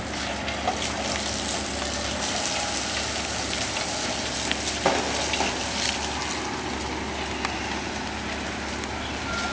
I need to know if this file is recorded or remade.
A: recorded